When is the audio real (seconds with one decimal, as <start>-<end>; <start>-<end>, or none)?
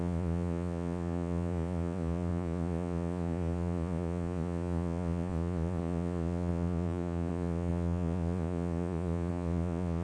none